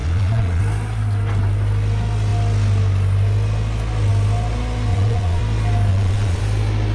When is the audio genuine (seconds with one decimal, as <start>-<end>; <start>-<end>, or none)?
0.6-4.9; 5.4-5.9; 6.4-6.9